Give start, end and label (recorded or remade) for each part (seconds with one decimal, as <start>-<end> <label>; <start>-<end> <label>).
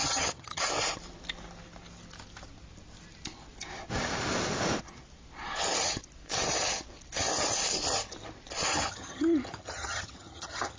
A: 0.0-0.6 remade; 0.6-8.7 recorded; 8.7-10.8 remade